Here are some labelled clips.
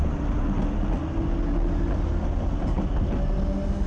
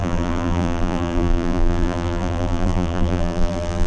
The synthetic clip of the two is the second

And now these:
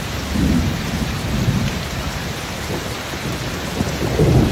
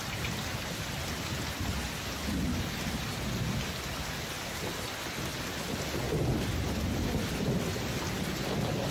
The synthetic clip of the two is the first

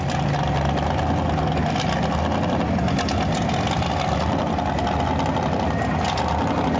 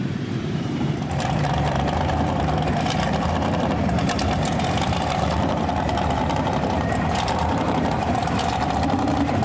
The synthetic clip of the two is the second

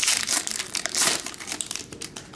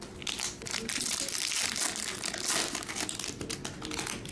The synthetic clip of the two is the first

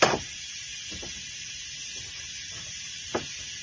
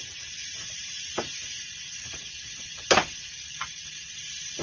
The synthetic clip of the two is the second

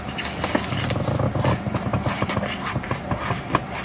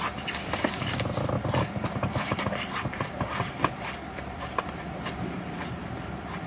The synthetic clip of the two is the second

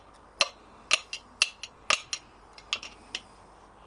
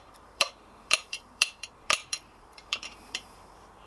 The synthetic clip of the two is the second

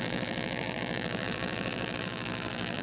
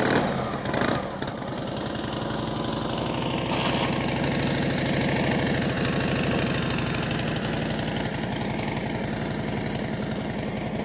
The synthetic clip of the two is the first